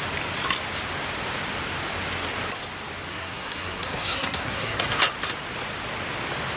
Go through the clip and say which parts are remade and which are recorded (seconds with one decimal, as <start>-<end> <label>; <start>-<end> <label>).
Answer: 0.0-3.1 recorded; 3.1-4.8 remade; 4.8-6.6 recorded